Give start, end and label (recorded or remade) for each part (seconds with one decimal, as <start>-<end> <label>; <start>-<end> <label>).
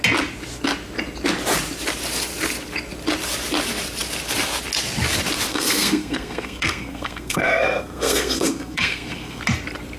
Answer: 0.0-5.5 recorded; 5.5-9.4 remade; 9.4-10.0 recorded